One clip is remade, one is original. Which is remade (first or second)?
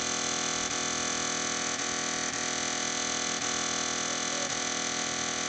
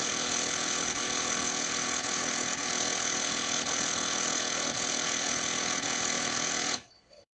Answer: second